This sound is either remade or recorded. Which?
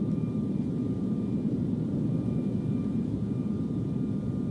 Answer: remade